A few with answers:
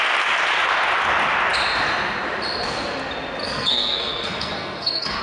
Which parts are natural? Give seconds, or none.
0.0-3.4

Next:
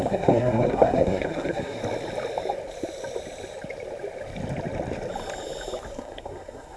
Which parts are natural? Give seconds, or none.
1.8-5.9

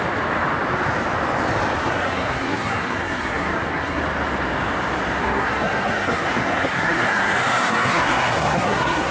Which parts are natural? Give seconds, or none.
0.0-1.8; 4.0-5.2

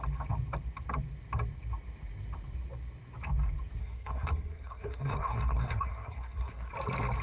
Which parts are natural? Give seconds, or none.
0.0-3.8; 6.7-7.2